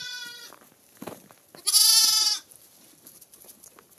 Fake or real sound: real